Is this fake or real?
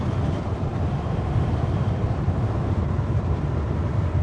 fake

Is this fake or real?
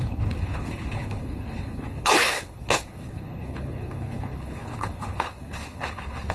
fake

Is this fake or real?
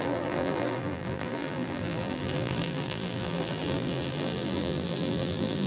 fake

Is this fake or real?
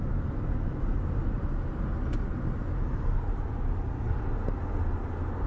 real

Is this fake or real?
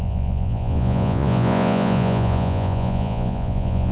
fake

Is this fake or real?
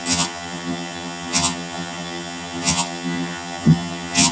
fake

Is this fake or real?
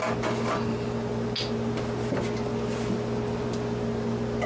real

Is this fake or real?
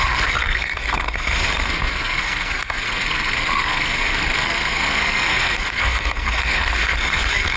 fake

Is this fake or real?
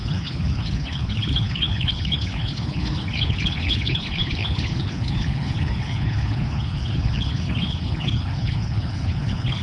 fake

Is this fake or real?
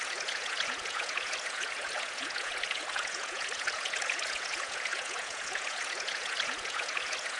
fake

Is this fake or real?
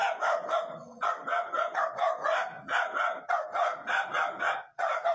real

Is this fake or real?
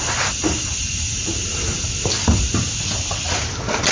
real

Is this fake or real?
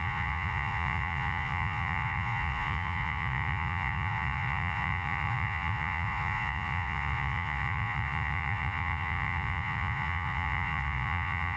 fake